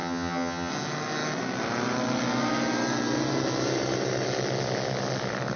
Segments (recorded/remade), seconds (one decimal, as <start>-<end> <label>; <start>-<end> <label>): 0.0-0.7 remade; 0.7-5.6 recorded